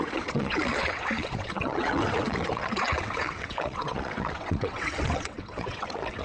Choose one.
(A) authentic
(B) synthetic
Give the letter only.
B